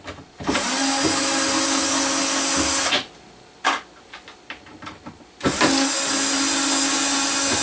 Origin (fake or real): real